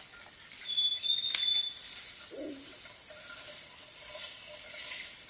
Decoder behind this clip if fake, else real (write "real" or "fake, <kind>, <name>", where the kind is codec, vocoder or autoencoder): real